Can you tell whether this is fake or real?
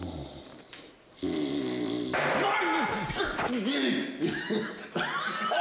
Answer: real